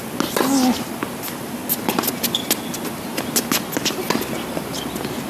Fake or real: real